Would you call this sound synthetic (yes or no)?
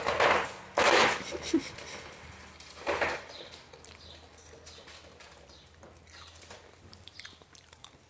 yes